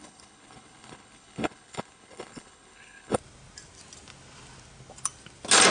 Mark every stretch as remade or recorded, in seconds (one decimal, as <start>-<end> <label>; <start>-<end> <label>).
0.0-3.2 remade; 3.2-5.7 recorded

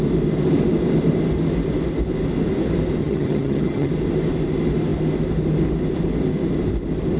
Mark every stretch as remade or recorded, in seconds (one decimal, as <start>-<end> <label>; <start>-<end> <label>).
0.0-3.0 recorded; 3.0-3.9 remade; 3.9-7.2 recorded

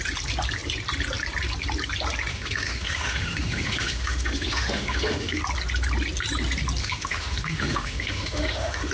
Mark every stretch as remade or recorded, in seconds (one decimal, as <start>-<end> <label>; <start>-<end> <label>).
0.0-2.3 recorded; 2.3-5.4 remade; 5.4-6.8 recorded; 6.8-8.9 remade

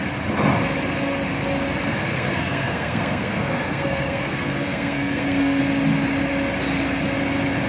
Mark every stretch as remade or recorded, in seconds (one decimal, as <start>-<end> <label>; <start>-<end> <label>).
0.0-2.0 recorded; 2.0-5.6 remade; 5.6-7.7 recorded

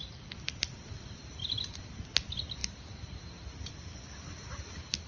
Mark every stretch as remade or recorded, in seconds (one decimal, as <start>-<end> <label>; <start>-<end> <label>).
0.0-1.4 recorded; 1.4-2.0 remade; 2.0-5.1 recorded

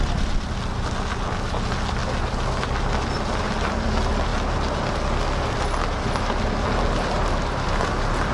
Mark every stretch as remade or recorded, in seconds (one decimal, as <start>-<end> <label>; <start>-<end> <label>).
0.0-8.3 recorded